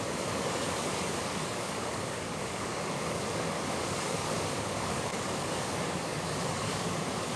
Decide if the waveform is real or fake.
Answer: fake